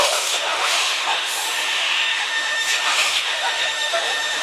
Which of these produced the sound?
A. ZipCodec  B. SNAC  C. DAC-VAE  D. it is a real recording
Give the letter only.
C